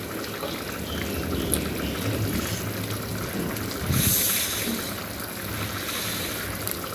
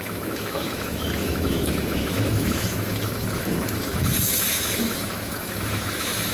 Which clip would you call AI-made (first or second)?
second